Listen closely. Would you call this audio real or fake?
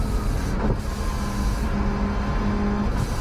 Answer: real